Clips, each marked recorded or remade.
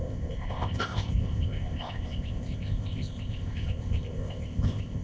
remade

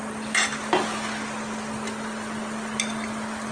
recorded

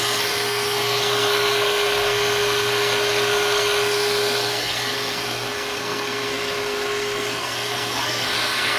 remade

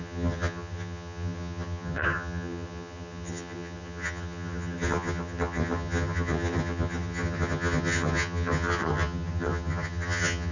remade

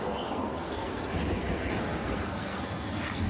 remade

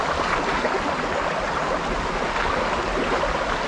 recorded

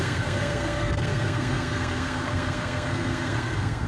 remade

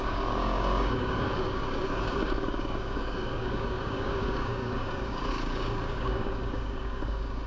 remade